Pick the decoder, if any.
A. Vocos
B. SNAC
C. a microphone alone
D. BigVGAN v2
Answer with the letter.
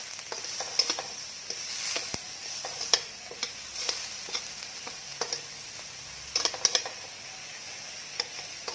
C